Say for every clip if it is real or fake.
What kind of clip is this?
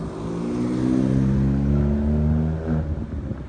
real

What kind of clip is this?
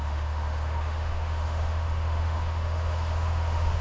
fake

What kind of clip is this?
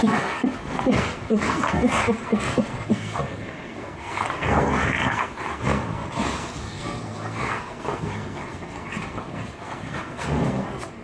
fake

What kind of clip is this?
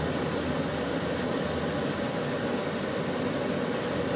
real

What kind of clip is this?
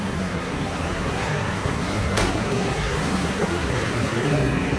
fake